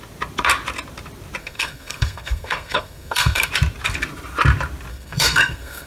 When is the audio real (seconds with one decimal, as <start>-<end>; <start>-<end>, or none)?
0.0-1.4; 3.5-4.9